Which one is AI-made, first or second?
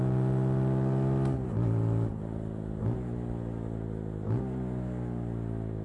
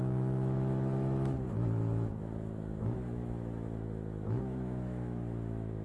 second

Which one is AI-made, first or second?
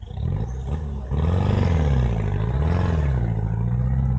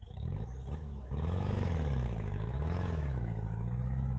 second